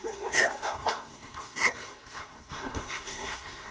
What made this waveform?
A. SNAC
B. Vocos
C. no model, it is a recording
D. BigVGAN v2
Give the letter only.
A